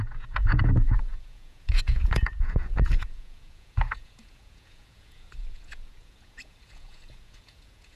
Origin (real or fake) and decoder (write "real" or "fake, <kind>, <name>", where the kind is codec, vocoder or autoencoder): fake, vocoder, Vocos